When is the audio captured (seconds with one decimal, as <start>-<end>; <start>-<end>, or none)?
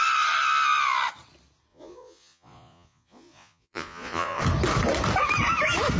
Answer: 0.0-1.7; 4.4-6.0